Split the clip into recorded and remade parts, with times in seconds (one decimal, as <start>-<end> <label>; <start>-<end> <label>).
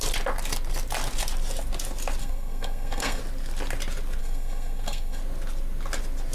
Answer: 0.0-2.2 recorded; 2.2-3.2 remade; 3.2-4.2 recorded; 4.2-5.2 remade; 5.2-6.3 recorded